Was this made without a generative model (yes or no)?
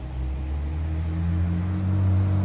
yes